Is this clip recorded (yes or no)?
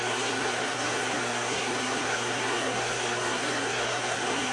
no